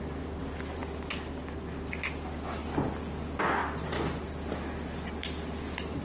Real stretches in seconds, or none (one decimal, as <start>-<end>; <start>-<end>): 0.0-6.0

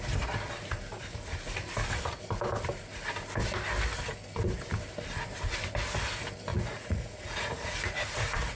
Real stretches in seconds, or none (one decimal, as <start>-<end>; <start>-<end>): 0.0-6.5

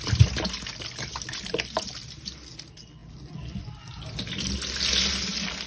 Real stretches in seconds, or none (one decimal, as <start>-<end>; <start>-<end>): 0.0-5.7